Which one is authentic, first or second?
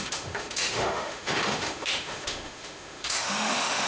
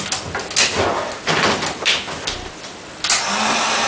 second